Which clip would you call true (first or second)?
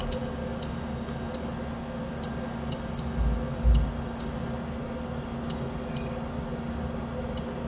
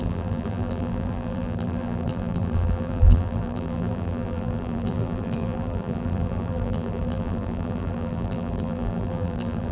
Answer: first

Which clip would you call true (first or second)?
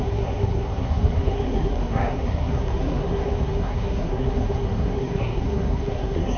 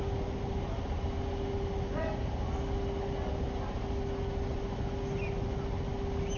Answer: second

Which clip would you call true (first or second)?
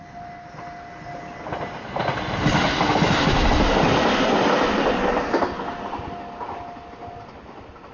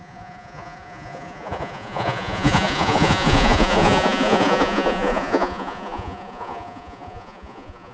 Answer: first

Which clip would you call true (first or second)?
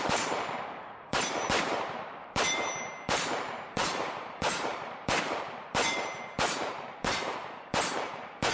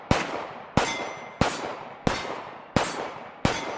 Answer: second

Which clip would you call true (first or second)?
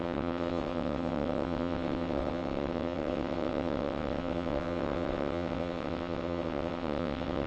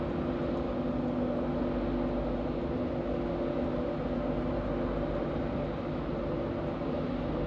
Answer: second